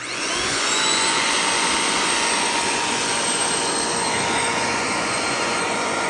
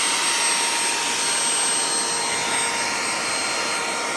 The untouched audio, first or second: second